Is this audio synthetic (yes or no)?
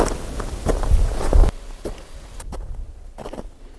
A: no